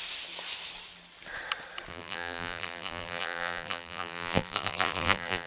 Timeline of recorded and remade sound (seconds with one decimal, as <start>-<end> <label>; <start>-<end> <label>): 0.0-1.9 recorded; 1.9-5.5 remade